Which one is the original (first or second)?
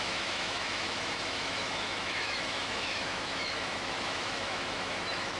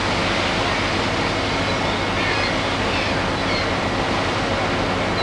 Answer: second